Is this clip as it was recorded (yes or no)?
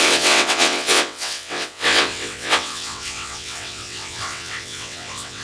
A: no